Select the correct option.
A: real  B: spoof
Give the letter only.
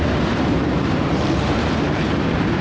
B